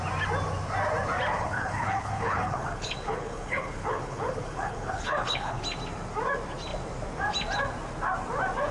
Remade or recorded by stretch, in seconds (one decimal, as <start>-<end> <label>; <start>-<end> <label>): 0.0-1.3 recorded; 1.3-5.6 remade; 5.6-8.7 recorded